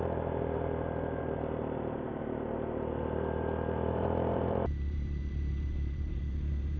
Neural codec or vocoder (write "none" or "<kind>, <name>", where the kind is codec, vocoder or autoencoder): vocoder, BigVGAN v2